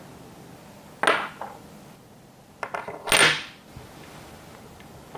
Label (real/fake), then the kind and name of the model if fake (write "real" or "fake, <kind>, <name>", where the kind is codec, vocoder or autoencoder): real